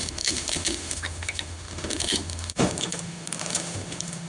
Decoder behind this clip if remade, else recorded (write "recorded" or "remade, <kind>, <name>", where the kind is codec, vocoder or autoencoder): remade, autoencoder, DAC-VAE